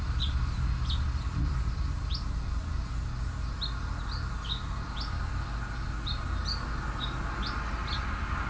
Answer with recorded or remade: recorded